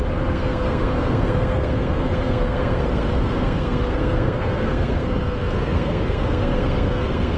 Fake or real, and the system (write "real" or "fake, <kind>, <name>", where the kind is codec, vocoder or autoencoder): fake, codec, SNAC